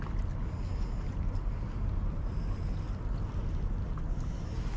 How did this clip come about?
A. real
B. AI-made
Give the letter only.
A